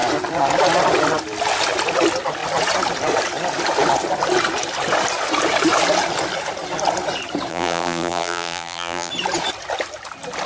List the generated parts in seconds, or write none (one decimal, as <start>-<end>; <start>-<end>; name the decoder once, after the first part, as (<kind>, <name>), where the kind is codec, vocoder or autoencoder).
7.5-9.1 (vocoder, BigVGAN v2)